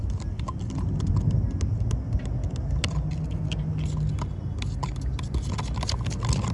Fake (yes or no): no